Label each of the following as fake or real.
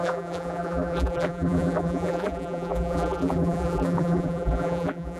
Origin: fake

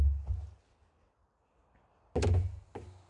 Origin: real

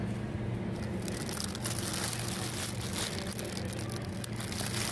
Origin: real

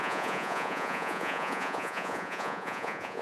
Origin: fake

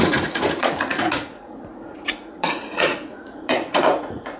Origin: fake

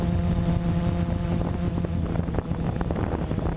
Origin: real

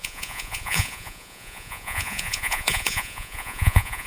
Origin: fake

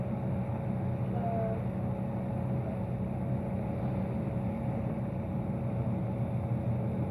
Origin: real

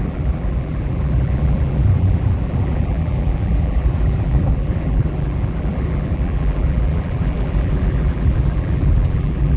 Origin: fake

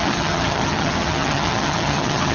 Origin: fake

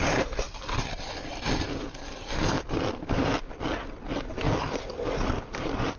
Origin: real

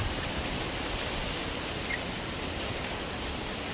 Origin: real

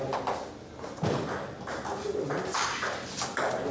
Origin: real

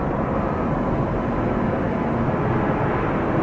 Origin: real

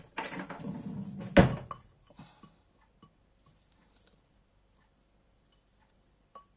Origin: real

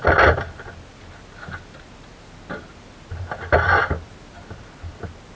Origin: real